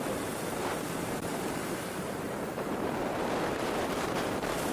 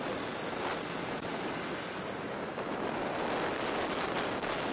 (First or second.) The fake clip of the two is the first